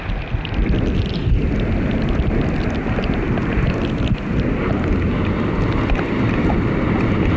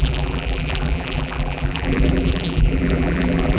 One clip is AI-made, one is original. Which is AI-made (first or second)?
second